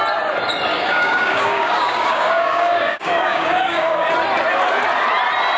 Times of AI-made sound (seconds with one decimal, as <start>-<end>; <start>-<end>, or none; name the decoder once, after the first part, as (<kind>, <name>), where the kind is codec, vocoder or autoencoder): 0.7-4.1 (codec, DAC)